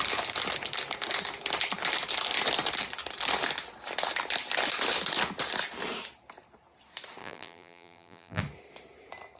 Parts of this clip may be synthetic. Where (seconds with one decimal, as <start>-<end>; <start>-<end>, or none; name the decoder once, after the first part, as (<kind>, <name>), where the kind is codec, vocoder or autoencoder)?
7.2-8.4 (vocoder, BigVGAN v2)